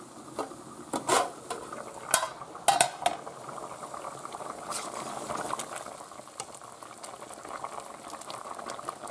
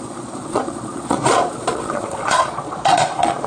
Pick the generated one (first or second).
second